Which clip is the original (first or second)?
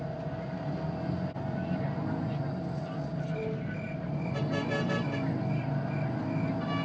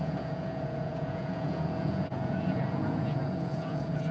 first